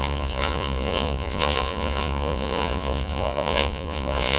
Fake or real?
fake